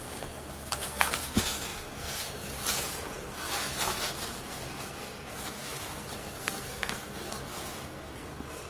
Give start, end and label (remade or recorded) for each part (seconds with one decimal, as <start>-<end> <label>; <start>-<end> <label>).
0.0-8.7 remade